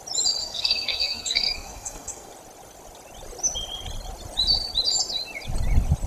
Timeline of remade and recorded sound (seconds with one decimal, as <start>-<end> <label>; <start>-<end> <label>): 0.0-0.4 recorded; 0.4-2.3 remade; 2.3-6.1 recorded